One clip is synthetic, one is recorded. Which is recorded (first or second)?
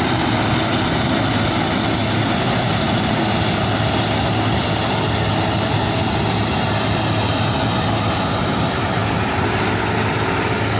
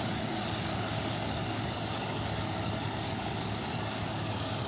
first